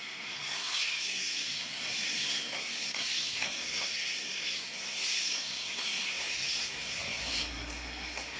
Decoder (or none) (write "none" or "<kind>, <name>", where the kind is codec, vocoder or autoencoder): codec, SNAC